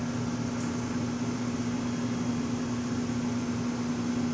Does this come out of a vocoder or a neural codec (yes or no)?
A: yes